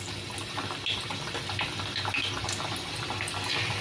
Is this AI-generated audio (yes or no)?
no